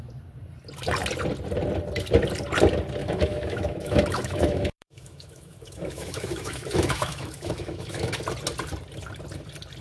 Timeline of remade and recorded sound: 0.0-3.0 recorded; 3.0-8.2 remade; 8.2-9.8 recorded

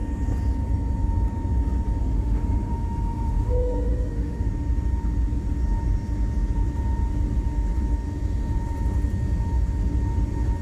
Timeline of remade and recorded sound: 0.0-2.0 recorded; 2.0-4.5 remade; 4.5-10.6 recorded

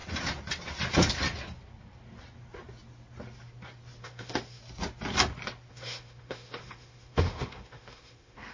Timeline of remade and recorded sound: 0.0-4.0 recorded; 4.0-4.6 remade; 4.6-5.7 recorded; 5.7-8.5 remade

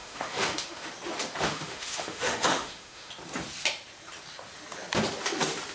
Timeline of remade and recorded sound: 0.0-0.9 remade; 0.9-1.5 recorded; 1.5-3.1 remade; 3.1-5.7 recorded

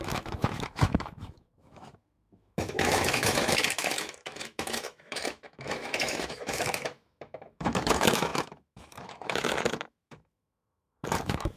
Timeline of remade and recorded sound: 0.0-11.6 remade

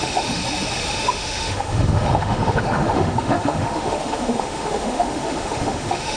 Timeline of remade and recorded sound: 0.0-0.4 remade; 0.4-0.9 recorded; 0.9-6.2 remade